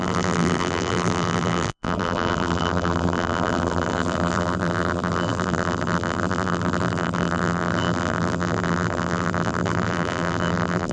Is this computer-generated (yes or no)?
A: yes